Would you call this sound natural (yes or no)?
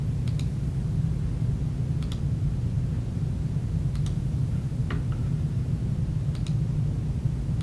yes